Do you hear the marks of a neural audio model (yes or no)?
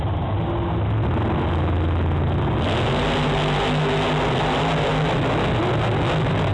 no